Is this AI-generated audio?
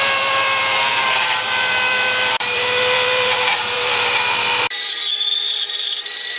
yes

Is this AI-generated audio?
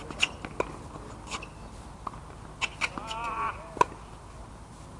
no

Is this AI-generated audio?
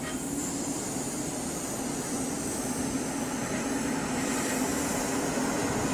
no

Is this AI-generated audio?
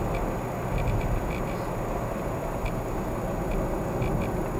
no